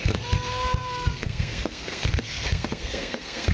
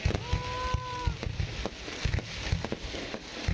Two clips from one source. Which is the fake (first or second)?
first